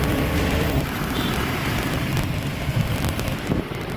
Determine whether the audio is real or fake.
fake